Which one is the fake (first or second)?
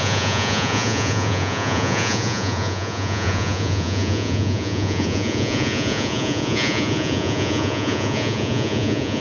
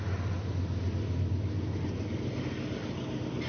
first